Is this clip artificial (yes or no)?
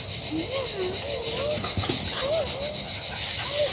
no